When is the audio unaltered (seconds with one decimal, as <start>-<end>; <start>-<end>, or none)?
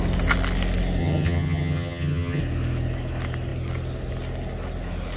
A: 0.0-1.0; 2.4-5.2